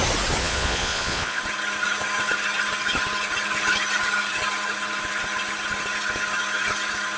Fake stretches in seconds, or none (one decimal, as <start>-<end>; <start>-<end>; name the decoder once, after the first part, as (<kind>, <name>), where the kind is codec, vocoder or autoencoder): 0.4-1.4 (vocoder, Vocos)

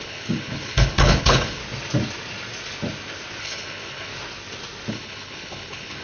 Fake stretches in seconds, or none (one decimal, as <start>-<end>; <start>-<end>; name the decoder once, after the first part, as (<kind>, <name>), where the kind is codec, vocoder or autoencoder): 0.0-1.6 (codec, HILCodec); 3.4-4.1; 4.9-6.0

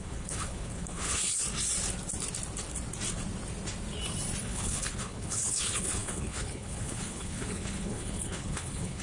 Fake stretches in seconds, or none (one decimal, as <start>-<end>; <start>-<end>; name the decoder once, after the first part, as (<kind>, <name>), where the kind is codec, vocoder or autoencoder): 0.0-1.4 (codec, HILCodec); 4.4-9.0

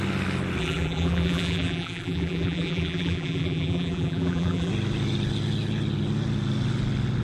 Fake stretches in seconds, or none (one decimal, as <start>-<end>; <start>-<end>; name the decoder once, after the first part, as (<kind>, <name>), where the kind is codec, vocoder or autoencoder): 0.6-4.7 (vocoder, BigVGAN v2)

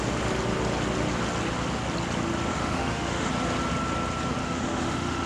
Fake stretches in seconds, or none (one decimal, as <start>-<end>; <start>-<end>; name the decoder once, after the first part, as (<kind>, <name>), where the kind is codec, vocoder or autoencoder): 2.5-3.3 (autoencoder, DAC-VAE); 4.4-5.3

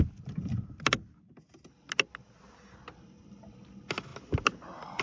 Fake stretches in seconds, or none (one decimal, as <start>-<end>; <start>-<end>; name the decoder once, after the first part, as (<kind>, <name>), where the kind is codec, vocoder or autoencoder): none